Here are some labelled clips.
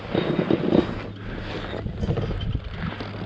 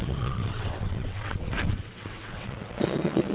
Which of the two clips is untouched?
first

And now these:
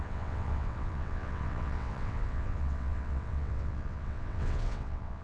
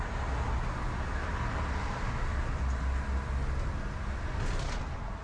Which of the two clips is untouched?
second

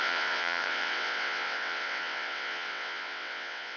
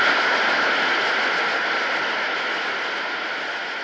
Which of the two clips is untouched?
second